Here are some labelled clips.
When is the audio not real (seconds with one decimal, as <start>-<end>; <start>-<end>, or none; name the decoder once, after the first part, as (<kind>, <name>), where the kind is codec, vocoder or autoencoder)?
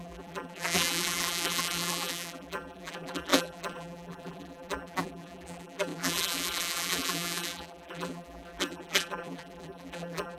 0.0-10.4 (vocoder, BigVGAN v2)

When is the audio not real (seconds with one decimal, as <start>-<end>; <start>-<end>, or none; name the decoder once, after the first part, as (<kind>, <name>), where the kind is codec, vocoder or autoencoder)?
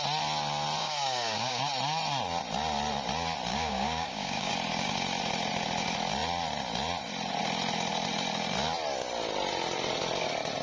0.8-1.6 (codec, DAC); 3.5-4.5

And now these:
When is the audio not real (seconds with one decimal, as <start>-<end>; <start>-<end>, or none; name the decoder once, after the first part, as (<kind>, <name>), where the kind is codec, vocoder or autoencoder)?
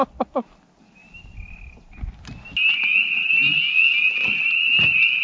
none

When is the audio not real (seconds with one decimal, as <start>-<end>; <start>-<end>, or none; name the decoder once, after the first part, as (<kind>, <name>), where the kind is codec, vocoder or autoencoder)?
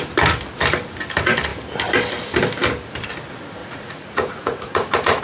3.6-5.2 (vocoder, Vocos)